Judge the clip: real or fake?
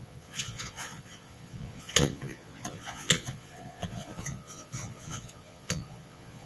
fake